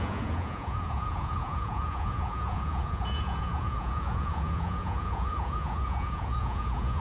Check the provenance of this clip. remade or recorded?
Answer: remade